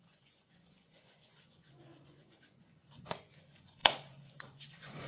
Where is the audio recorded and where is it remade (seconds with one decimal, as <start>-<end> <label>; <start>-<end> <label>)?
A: 0.0-5.1 remade